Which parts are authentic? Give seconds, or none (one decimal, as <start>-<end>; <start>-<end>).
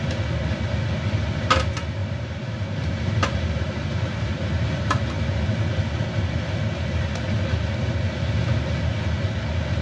0.0-2.0; 5.0-9.8